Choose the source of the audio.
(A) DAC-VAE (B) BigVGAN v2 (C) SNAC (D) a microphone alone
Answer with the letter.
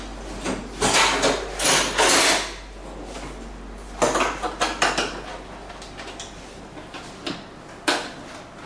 D